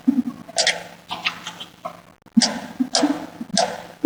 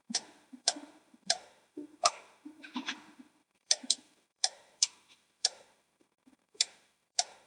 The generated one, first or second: second